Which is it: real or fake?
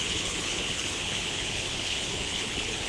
fake